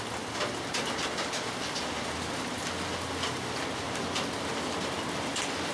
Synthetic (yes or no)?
no